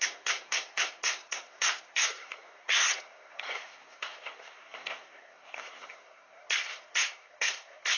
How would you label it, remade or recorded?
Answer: remade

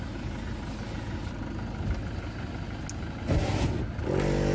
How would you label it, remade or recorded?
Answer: recorded